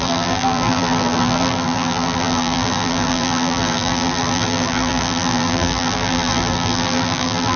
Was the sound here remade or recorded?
remade